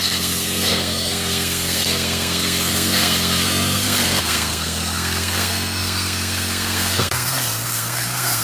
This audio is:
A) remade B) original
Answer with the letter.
A